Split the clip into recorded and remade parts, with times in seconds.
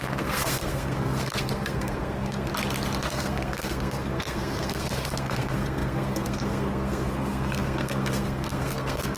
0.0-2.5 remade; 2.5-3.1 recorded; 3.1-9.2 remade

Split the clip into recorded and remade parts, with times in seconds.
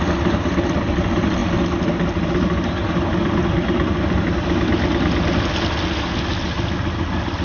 0.0-7.4 recorded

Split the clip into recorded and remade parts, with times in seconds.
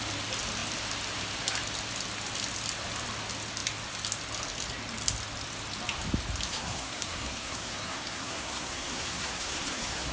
0.0-6.5 recorded; 6.5-10.1 remade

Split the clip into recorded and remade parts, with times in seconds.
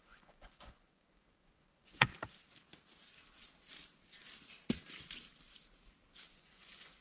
0.0-2.1 remade; 2.1-6.3 recorded; 6.3-7.0 remade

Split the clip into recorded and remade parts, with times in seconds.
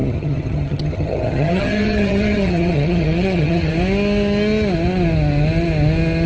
0.0-3.7 remade; 3.7-6.3 recorded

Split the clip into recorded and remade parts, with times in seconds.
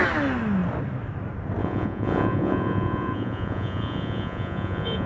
0.0-1.6 recorded; 1.6-5.1 remade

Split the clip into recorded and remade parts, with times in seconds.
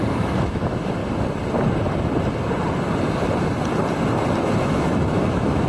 0.0-1.0 remade; 1.0-4.4 recorded; 4.4-5.7 remade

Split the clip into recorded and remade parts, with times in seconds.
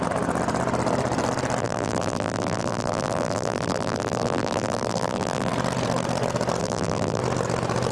0.0-1.6 recorded; 1.6-5.5 remade; 5.5-6.6 recorded; 6.6-7.2 remade; 7.2-7.9 recorded